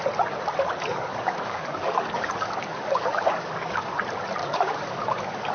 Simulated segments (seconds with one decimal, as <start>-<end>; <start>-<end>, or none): 0.9-4.0; 4.4-5.5